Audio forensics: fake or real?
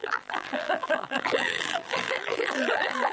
fake